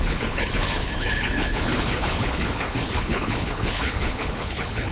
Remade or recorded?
remade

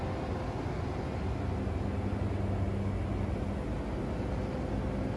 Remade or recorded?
recorded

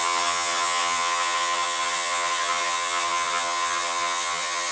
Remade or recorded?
remade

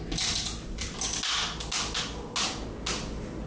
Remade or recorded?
recorded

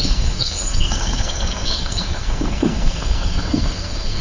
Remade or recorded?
remade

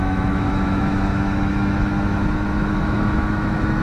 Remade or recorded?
remade